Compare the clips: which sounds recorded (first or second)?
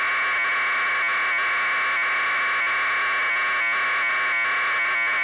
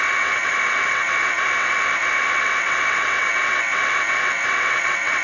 first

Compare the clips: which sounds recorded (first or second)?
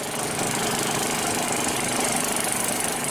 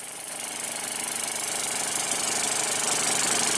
second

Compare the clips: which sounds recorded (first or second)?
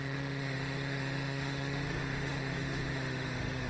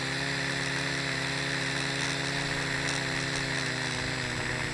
second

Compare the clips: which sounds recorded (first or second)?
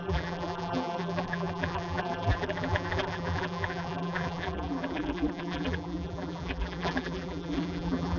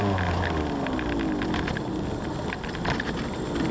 second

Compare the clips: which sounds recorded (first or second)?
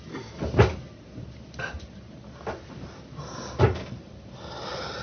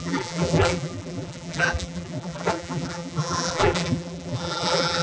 first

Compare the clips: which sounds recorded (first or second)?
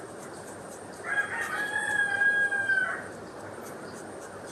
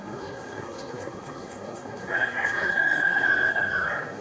first